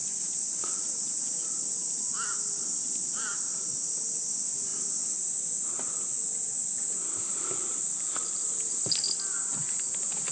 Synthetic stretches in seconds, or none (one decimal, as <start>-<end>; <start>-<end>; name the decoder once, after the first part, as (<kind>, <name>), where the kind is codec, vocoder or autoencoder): none